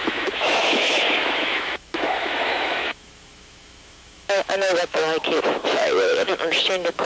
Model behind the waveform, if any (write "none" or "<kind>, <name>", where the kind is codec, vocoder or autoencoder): autoencoder, DAC-VAE